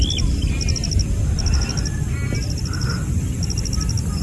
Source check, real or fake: real